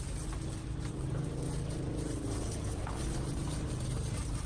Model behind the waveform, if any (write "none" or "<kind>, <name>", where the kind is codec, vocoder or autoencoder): none